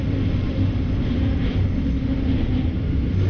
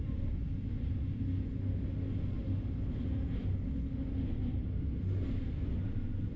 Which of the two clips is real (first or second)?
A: second